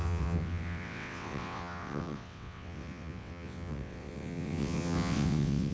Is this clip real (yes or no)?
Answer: no